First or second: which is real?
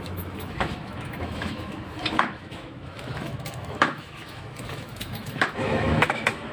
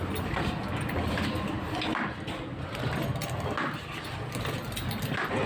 second